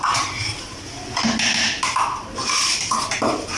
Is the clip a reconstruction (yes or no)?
no